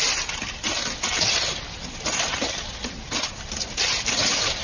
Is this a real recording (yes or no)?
yes